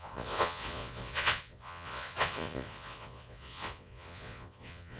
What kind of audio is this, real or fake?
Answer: fake